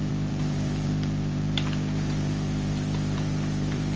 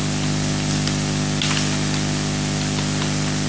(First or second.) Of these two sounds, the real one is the second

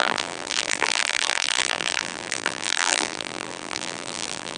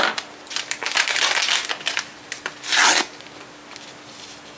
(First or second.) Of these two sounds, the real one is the second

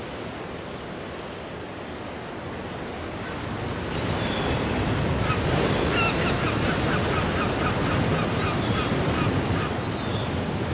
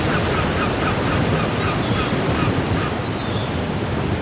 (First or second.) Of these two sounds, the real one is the first